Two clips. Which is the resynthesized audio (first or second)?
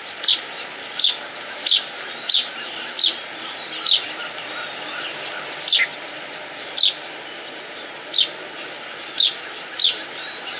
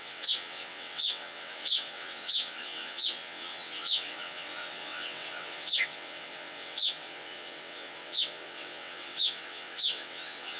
second